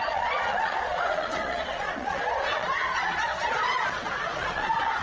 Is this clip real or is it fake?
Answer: fake